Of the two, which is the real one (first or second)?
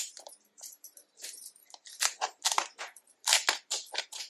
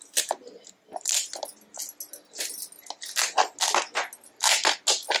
second